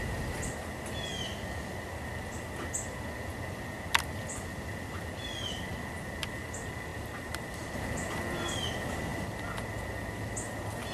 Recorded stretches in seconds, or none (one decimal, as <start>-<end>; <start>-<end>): 0.0-6.9; 7.7-10.9